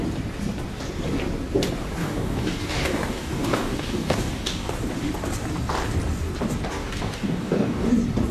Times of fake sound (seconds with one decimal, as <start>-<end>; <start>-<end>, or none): 2.0-4.7; 6.7-7.9